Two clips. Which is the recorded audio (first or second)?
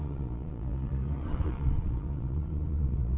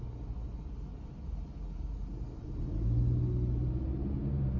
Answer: second